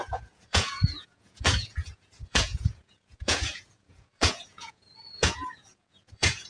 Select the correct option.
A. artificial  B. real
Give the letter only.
A